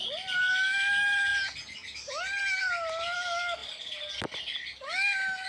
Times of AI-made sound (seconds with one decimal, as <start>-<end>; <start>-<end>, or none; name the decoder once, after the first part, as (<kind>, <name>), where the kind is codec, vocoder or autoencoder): none